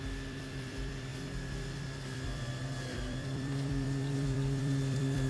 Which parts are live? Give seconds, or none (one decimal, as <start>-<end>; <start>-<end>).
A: none